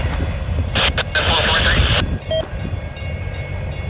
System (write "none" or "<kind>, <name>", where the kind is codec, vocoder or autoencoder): none